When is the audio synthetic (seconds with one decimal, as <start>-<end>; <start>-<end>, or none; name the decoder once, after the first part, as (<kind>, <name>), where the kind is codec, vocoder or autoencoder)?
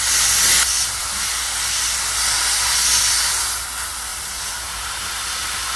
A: 4.1-5.1 (vocoder, BigVGAN v2)